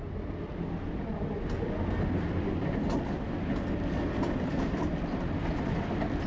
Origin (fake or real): real